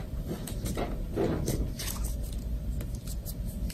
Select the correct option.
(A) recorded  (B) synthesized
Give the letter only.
A